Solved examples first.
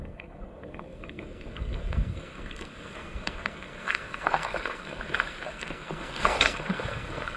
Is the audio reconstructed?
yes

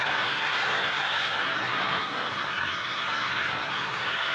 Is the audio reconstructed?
yes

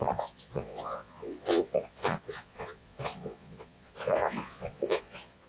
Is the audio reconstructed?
yes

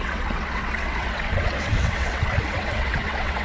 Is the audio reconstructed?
yes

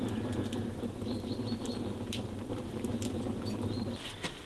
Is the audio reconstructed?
no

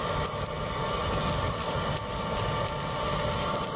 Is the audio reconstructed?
no